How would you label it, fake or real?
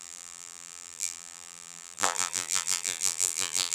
fake